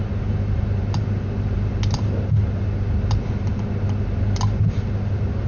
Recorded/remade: recorded